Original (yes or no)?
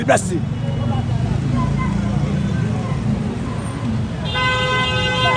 yes